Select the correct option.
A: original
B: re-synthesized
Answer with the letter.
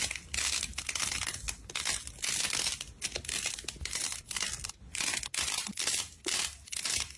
A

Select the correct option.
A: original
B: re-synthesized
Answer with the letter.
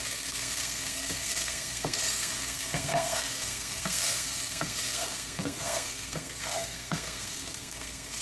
B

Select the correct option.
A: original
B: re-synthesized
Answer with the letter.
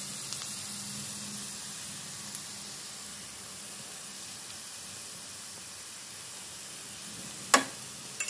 A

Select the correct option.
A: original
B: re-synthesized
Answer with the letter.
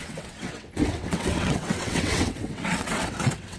B